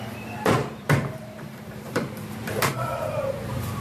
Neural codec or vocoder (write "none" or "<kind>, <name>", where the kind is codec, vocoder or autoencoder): vocoder, BigVGAN v2